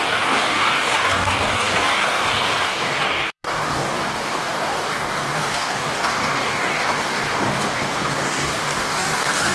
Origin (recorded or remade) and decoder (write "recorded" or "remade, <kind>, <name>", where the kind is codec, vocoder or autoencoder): remade, codec, DAC